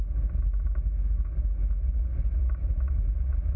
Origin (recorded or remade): recorded